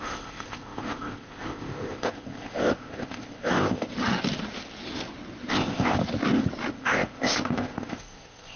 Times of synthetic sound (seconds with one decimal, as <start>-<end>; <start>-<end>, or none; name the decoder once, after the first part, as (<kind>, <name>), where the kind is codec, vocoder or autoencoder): 0.0-3.9 (codec, ZipCodec); 5.5-6.0; 6.7-8.6